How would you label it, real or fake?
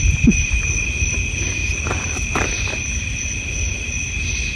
real